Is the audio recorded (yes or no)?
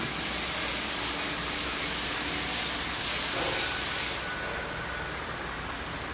yes